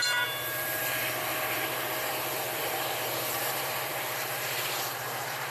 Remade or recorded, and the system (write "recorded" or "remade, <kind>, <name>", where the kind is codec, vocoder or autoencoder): remade, vocoder, BigVGAN v2